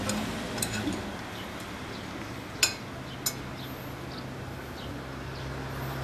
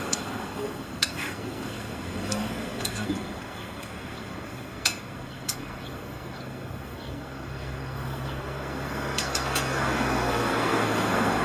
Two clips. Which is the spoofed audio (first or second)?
second